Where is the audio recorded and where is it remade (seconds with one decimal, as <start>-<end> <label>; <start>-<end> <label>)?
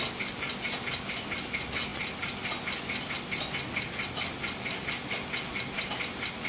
0.0-6.5 recorded